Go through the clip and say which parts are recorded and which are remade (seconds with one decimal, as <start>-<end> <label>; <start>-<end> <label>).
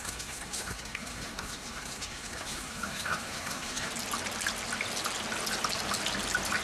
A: 0.0-3.9 remade; 3.9-6.6 recorded